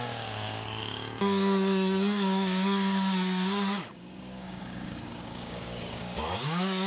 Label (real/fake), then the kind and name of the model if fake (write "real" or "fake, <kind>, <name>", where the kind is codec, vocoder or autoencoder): fake, codec, DAC